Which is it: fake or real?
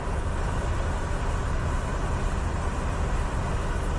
real